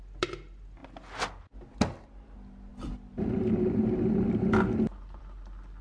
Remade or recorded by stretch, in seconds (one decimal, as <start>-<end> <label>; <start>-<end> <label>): 0.0-5.8 recorded